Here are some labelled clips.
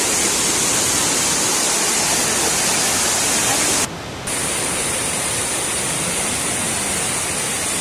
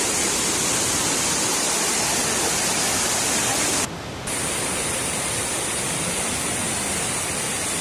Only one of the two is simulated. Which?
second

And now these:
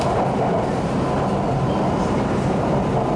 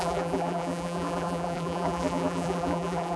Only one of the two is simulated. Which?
second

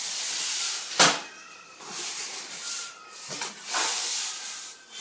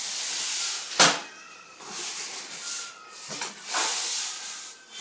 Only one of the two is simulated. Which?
first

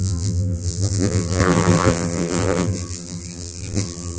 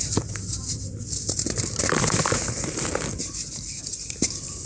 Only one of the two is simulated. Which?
first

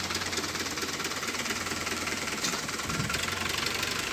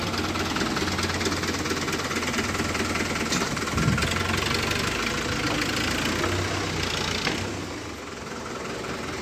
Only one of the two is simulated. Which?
first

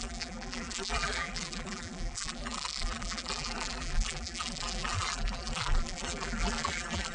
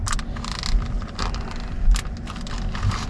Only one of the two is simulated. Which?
first